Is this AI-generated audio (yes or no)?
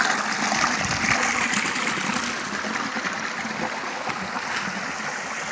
no